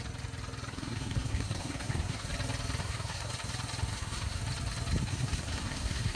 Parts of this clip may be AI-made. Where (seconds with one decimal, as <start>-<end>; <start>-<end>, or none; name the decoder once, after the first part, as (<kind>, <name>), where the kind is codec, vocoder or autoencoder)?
0.7-2.3 (codec, SNAC); 2.8-3.3; 3.9-4.4; 5.1-6.2

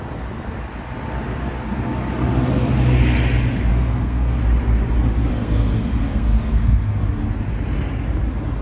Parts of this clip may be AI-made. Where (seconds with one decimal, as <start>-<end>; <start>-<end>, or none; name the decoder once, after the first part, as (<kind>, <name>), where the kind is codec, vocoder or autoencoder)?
3.7-4.4 (codec, SNAC); 5.3-7.0